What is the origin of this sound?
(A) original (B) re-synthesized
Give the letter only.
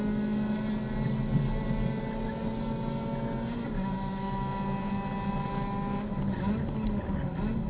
A